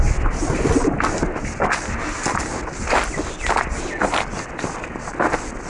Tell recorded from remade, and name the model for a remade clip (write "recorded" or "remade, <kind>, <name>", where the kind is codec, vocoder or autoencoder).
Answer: recorded